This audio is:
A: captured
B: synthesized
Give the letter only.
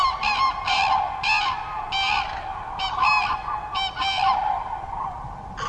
A